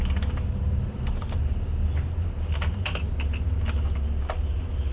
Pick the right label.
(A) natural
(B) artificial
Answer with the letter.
A